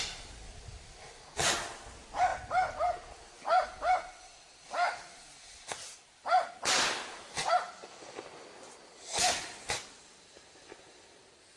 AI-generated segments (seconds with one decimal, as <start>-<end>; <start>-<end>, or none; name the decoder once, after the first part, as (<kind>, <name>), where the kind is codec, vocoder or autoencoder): none

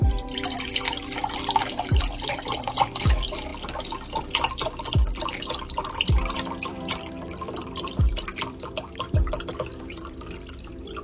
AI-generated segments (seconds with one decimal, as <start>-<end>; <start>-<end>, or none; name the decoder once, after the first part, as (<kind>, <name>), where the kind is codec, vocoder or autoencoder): 0.0-3.5 (vocoder, BigVGAN v2); 4.2-11.0

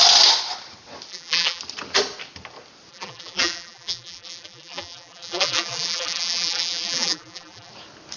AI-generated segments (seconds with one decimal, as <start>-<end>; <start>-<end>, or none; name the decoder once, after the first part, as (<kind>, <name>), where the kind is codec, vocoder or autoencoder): 1.1-1.6 (vocoder, BigVGAN v2); 2.9-7.7

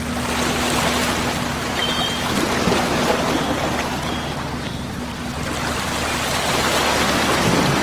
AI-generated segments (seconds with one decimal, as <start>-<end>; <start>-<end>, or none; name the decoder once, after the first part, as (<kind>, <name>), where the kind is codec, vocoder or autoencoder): none

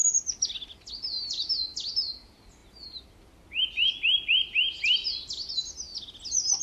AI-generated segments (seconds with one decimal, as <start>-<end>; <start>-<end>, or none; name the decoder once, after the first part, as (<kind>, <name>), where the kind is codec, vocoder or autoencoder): none

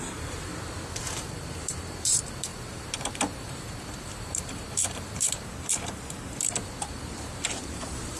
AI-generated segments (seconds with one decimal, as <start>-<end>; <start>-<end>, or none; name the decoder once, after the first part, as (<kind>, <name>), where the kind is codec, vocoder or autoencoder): 0.0-0.5 (vocoder, BigVGAN v2); 1.0-8.2

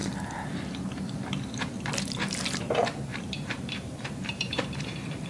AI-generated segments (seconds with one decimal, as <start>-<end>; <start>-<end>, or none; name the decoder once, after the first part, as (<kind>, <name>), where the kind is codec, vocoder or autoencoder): 2.0-5.3 (vocoder, BigVGAN v2)

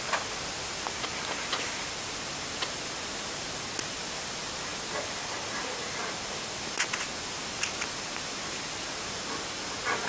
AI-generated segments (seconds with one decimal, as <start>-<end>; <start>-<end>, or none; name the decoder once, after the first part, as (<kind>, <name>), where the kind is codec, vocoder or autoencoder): none